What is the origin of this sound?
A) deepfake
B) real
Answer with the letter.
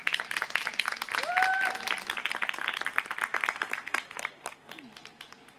B